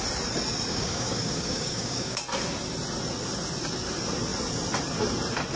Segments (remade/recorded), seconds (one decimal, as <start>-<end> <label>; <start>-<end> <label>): 0.0-0.7 recorded; 0.7-2.2 remade; 2.2-5.6 recorded